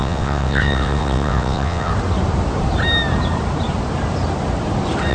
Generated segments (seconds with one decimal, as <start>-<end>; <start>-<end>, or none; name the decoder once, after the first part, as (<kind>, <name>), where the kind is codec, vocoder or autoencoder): 0.0-1.9 (vocoder, WaveNeXt)